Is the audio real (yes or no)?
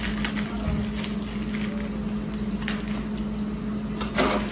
yes